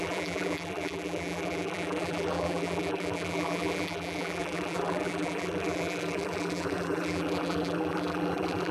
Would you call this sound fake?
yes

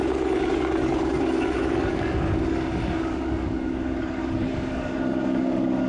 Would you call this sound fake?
yes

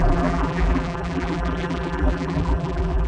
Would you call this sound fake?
yes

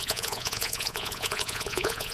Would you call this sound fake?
yes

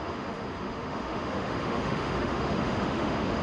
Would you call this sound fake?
yes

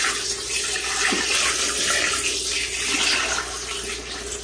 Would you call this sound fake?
no